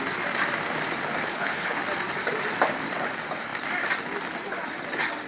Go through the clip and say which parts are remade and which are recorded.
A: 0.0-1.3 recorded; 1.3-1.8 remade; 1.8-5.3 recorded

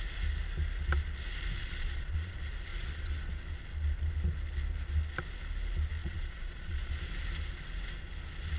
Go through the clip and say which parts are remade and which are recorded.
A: 0.0-1.6 recorded; 1.6-2.3 remade; 2.3-2.7 recorded; 2.7-3.3 remade; 3.3-6.0 recorded; 6.0-6.9 remade; 6.9-8.6 recorded

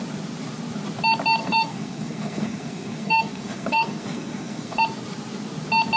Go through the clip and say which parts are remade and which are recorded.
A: 0.0-1.4 recorded; 1.4-4.8 remade; 4.8-6.0 recorded

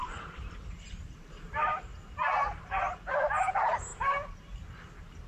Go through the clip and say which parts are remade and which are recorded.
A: 0.0-1.0 recorded; 1.0-1.9 remade; 1.9-3.4 recorded; 3.4-3.9 remade; 3.9-5.3 recorded

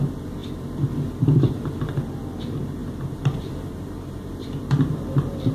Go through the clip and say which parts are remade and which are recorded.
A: 0.0-2.8 recorded; 2.8-4.9 remade; 4.9-5.5 recorded